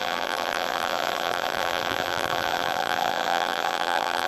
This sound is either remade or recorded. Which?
remade